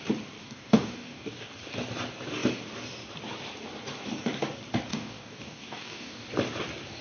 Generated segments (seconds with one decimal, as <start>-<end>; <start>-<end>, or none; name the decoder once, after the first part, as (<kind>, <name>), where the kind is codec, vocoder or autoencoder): 0.4-1.5 (codec, DAC); 4.9-6.3